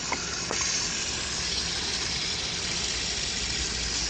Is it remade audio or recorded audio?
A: recorded